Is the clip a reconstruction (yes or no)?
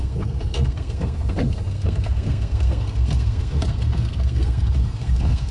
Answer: yes